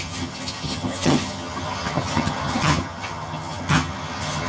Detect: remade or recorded remade